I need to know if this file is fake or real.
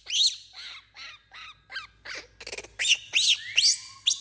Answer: real